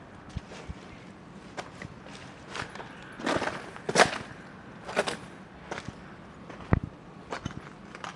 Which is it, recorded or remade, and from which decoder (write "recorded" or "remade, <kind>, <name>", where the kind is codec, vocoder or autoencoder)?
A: recorded